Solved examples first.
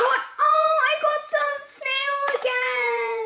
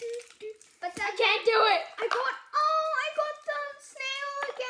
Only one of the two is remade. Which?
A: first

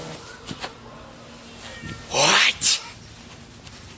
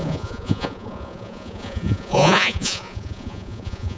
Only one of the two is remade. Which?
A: second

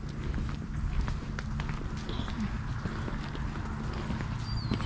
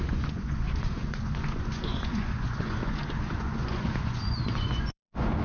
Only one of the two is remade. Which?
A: second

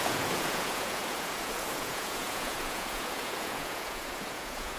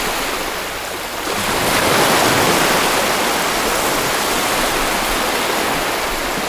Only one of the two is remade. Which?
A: first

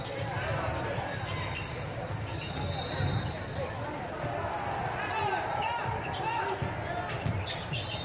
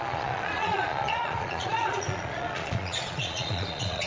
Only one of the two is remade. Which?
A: second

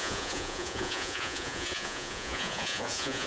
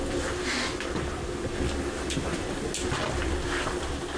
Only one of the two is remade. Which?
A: first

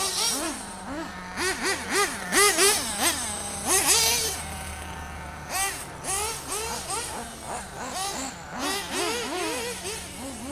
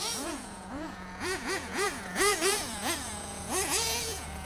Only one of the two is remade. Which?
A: second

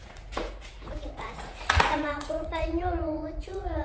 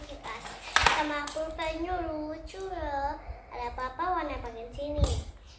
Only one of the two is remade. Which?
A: first